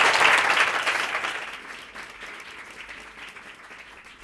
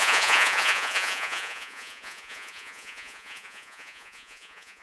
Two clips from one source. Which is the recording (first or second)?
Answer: first